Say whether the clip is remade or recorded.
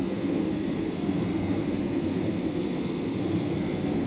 remade